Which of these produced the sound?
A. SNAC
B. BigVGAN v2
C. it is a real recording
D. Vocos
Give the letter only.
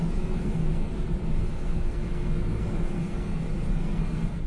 A